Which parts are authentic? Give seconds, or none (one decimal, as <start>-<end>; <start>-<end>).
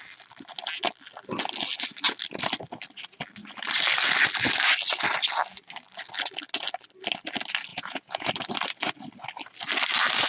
0.0-7.7; 8.3-10.3